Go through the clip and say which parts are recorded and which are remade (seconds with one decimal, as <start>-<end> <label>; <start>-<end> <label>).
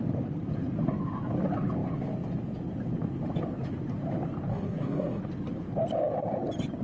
0.0-4.5 recorded; 4.5-5.2 remade; 5.2-6.8 recorded